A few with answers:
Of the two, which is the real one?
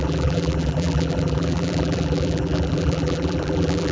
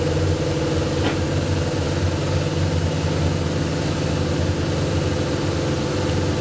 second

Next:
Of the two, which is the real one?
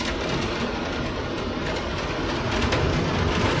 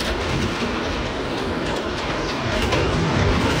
first